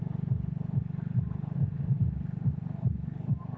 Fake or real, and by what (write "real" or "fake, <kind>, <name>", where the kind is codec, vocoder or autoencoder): real